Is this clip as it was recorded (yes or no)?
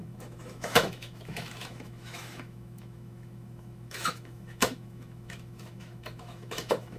no